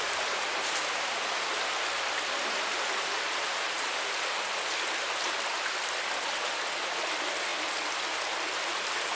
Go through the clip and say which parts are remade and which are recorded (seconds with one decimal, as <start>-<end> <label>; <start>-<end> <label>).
0.0-9.2 recorded